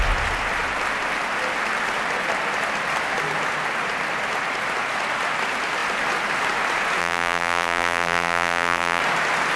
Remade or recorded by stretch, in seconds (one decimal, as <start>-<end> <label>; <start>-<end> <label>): 0.0-7.0 recorded; 7.0-9.0 remade; 9.0-9.6 recorded